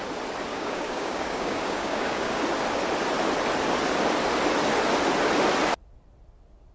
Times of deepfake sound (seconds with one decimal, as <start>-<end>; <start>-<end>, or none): 0.5-2.4

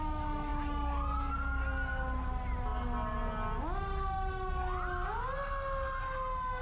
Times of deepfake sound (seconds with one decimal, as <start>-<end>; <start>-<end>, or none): none

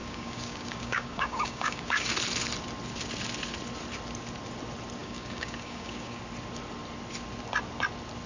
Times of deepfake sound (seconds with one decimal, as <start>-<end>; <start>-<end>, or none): 0.0-2.1; 5.0-6.2